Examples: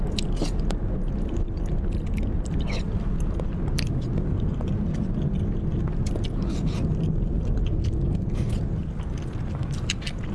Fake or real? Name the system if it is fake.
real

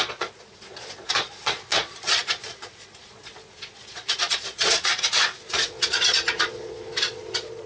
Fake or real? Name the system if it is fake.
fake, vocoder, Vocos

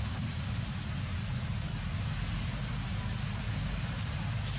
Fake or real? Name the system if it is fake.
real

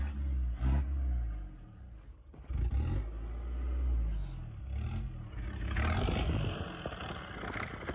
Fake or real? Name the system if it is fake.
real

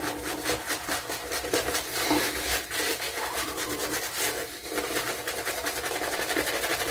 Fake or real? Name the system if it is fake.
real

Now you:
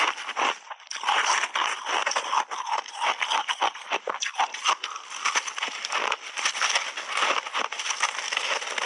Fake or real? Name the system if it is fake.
real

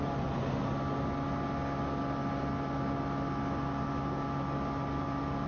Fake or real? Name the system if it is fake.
real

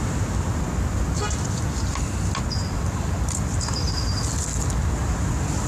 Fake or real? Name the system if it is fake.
real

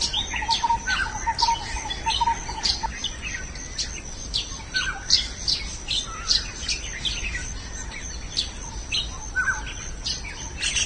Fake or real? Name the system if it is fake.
real